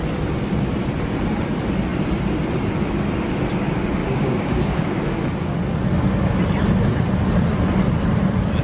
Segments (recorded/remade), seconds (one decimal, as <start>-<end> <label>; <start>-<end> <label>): 0.0-4.0 recorded; 4.0-5.3 remade; 5.3-8.6 recorded